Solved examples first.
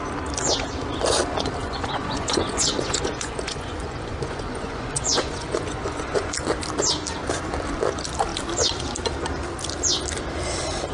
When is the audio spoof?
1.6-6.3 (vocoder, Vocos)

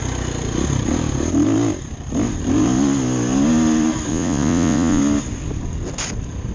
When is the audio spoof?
4.1-5.0 (vocoder, Vocos)

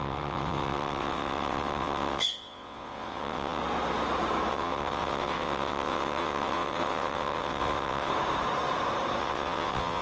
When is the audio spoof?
0.0-3.6 (vocoder, WaveNeXt); 4.5-8.1; 9.2-10.0

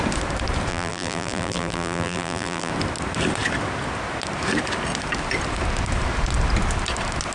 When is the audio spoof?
0.7-2.7 (vocoder, BigVGAN v2)

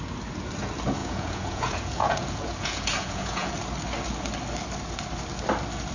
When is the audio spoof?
1.0-3.5 (vocoder, Vocos)